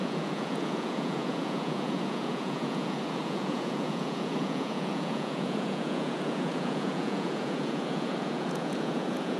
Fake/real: fake